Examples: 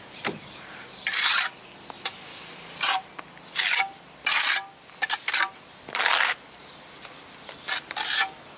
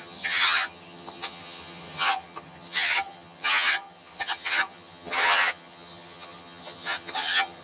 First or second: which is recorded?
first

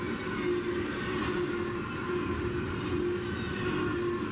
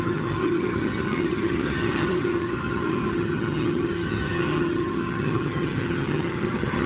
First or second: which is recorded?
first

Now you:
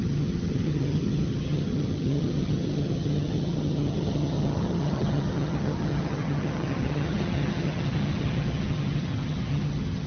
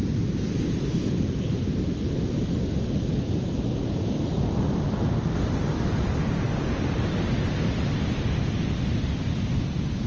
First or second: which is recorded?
second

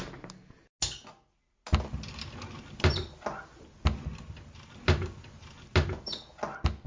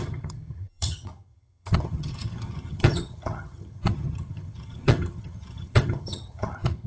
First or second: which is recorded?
first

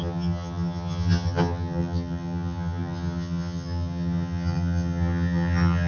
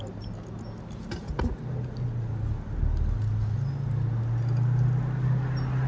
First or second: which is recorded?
second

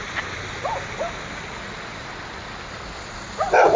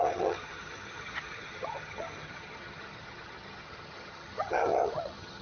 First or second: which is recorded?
first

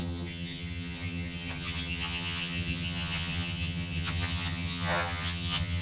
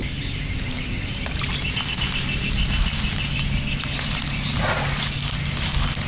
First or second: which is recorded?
second